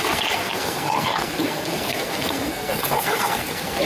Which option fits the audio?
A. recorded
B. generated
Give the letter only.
B